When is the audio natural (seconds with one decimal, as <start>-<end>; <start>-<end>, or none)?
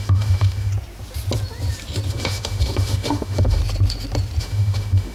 0.7-2.1; 3.6-4.4